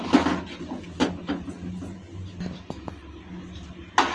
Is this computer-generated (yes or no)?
no